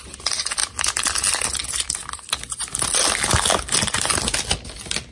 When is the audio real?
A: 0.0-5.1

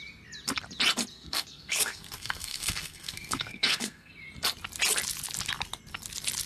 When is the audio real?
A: 0.0-1.1; 4.1-6.5

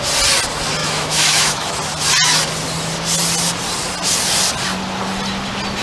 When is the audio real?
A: 0.0-0.8; 1.8-5.8

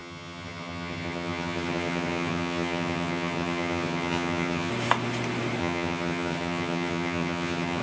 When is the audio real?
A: 4.7-5.6

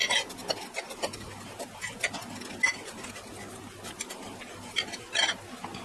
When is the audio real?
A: 0.0-5.8

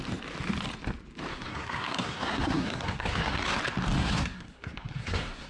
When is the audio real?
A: 0.0-1.3; 3.6-4.0

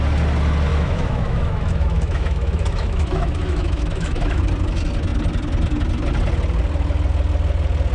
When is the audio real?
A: 0.0-0.7; 4.4-7.9